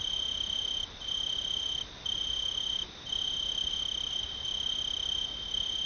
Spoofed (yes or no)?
no